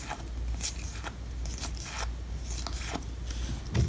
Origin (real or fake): real